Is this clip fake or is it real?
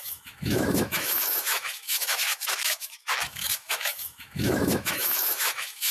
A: fake